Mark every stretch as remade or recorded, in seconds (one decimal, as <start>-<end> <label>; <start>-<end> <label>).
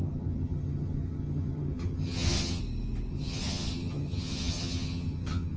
0.0-2.6 remade; 2.6-3.1 recorded; 3.1-5.6 remade